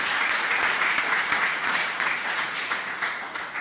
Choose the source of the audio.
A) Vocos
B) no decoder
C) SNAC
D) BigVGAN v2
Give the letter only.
A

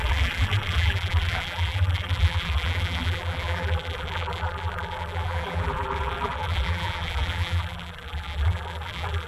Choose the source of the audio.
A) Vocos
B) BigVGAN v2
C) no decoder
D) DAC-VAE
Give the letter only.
B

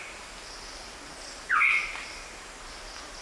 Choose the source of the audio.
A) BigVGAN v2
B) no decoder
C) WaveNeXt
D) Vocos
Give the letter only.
B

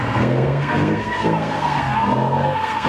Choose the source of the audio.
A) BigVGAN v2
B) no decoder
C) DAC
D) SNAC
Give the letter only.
D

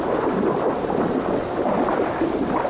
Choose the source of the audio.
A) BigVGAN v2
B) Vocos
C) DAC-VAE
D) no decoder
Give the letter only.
D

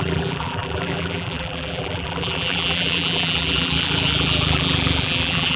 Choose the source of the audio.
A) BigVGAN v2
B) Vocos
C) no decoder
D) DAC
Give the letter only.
A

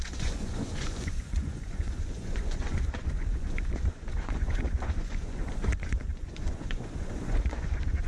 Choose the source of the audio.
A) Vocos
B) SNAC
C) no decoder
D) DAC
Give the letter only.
A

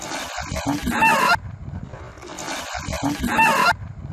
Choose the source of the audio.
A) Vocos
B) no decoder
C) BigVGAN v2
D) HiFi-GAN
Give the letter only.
B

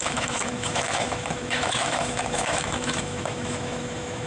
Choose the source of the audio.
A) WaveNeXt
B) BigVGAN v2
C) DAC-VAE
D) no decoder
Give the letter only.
C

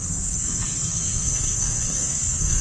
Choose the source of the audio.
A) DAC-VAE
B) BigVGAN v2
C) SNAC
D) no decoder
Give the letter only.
C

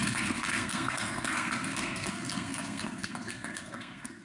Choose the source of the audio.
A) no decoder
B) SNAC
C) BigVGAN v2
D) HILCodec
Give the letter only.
B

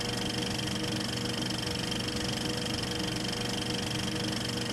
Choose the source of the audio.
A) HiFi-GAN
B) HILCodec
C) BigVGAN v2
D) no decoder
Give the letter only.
D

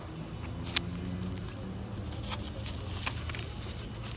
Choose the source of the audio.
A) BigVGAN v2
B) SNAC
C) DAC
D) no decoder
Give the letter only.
D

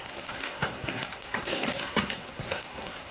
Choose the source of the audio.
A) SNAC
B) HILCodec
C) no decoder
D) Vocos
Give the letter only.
A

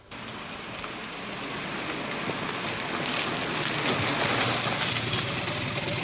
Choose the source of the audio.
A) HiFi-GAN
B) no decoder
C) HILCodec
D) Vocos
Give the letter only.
B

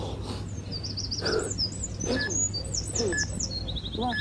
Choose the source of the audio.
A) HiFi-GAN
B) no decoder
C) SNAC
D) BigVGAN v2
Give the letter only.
B